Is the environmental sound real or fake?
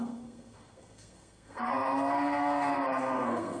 fake